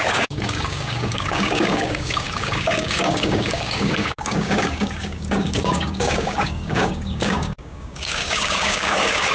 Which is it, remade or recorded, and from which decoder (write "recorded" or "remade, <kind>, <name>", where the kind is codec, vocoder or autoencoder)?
remade, codec, DAC